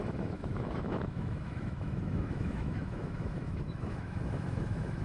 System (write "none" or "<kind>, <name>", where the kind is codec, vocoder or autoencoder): autoencoder, DAC-VAE